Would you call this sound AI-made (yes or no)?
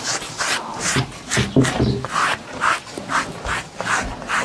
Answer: no